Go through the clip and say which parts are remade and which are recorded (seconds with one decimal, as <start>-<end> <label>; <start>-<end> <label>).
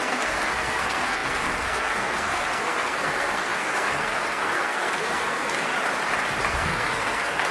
0.0-5.7 remade; 5.7-6.5 recorded; 6.5-7.5 remade